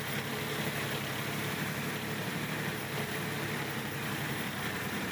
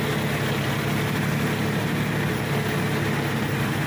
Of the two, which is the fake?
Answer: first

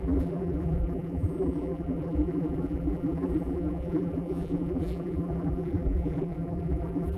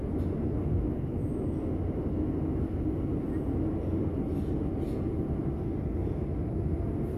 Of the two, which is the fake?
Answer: first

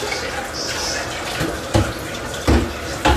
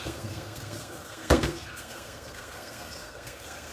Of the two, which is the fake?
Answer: second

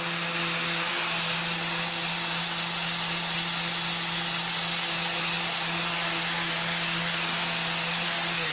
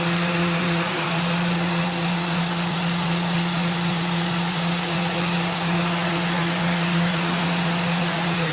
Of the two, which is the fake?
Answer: second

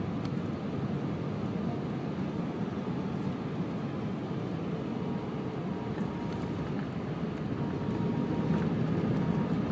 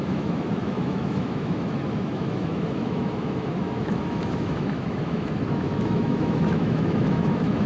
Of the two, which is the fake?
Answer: second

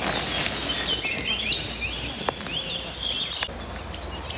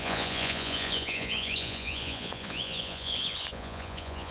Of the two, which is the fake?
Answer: second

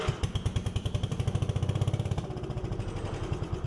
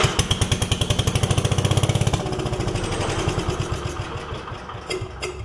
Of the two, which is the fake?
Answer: first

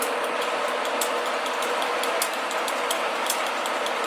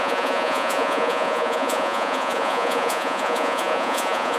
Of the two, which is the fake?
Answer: second